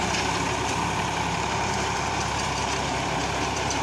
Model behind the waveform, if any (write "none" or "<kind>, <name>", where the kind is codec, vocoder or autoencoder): vocoder, BigVGAN v2